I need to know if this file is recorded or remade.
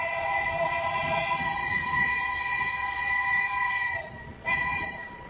remade